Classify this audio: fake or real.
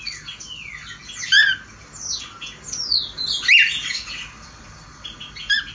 real